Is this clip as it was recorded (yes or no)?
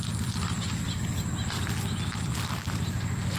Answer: yes